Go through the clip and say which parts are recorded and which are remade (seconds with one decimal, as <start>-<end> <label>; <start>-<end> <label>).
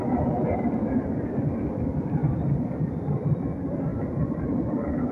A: 0.0-2.2 recorded; 2.2-3.5 remade; 3.5-5.1 recorded